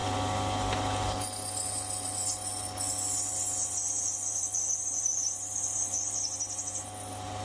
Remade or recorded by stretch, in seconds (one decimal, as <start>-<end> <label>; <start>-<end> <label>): 0.0-7.4 recorded